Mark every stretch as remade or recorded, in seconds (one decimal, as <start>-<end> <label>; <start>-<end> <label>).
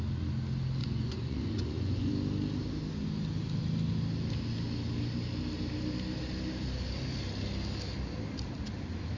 0.0-0.8 recorded; 0.8-2.1 remade; 2.1-9.2 recorded